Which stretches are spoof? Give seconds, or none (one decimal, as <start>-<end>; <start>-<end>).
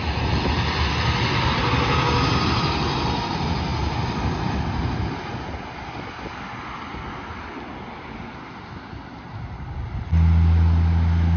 none